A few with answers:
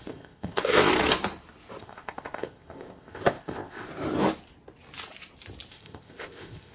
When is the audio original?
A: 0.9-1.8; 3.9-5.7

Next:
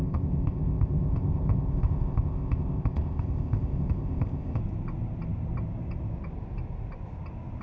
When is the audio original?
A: 4.6-7.6

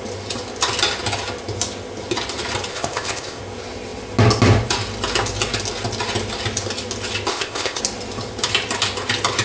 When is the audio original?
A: 0.0-2.7; 3.4-7.3; 7.8-9.4

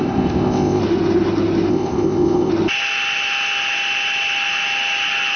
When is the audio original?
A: 0.8-1.7; 2.5-5.4

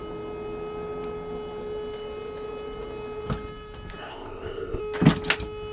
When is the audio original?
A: 0.0-4.0; 4.8-5.7

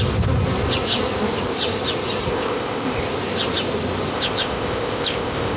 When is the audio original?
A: 0.0-2.3; 3.0-4.1